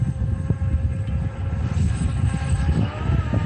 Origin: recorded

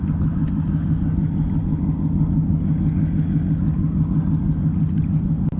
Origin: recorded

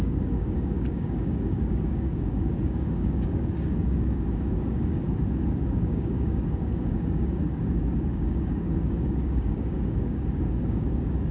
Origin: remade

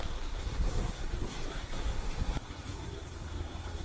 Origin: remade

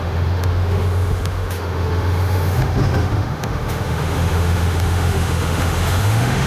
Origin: remade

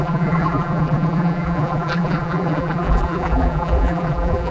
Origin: remade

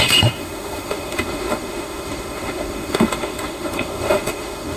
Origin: remade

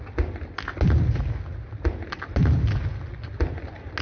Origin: recorded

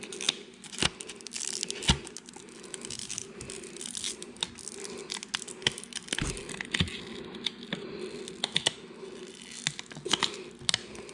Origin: recorded